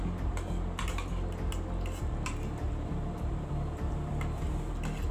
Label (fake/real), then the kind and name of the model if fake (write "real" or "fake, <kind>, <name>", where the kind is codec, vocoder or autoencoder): real